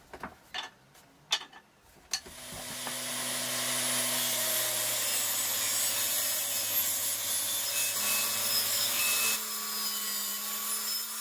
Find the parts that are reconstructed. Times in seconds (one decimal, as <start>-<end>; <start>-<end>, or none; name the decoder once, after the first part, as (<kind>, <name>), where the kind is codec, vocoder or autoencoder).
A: 8.4-9.0 (codec, DAC)